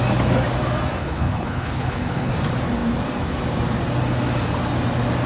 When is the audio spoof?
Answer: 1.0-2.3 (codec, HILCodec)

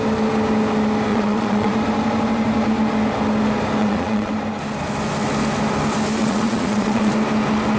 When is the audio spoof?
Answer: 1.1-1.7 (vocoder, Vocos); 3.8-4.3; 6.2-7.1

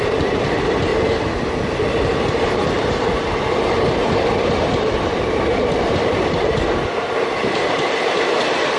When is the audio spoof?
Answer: 0.0-0.9 (vocoder, BigVGAN v2); 1.7-2.6; 3.6-8.8

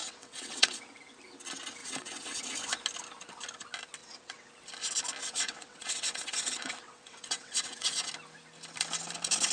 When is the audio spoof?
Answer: 0.0-0.8 (vocoder, WaveNeXt); 1.8-2.4; 4.0-4.5; 5.2-8.1

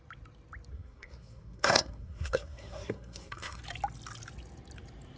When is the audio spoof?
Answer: 0.7-3.6 (codec, SNAC)

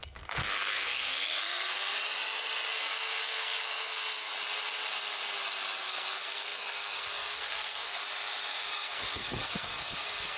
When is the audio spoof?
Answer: 0.0-1.9 (codec, SNAC); 2.7-4.3; 5.8-8.0; 8.5-10.4